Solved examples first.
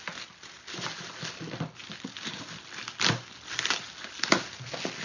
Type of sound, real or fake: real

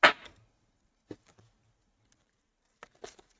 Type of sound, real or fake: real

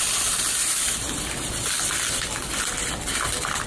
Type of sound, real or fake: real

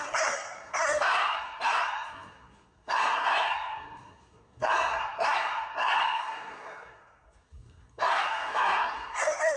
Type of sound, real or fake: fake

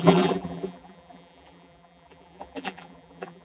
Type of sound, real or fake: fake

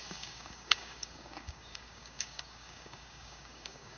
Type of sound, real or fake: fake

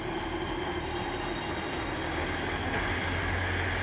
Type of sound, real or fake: real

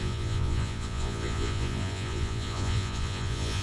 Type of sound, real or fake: fake